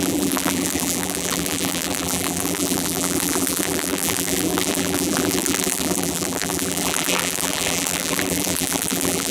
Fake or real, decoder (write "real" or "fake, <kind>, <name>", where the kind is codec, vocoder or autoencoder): fake, vocoder, BigVGAN v2